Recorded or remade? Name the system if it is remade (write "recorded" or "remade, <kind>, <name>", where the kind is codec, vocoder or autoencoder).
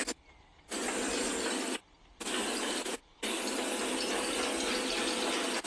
recorded